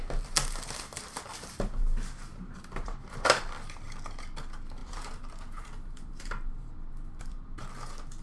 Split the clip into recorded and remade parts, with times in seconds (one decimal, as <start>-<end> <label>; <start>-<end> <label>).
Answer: 0.0-2.3 recorded; 2.3-3.0 remade; 3.0-4.8 recorded; 4.8-7.6 remade; 7.6-8.2 recorded